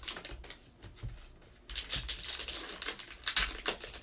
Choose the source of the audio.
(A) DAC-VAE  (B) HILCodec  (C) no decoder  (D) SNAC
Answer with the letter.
C